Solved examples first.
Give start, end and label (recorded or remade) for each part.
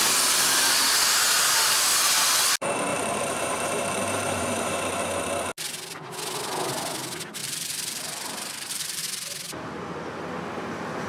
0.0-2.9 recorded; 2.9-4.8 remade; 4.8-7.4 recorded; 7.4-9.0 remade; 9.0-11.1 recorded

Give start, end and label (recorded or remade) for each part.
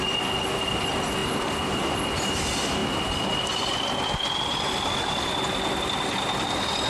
0.0-6.9 recorded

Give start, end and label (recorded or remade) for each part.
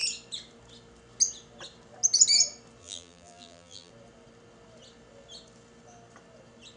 0.0-2.8 recorded; 2.8-3.9 remade; 3.9-6.8 recorded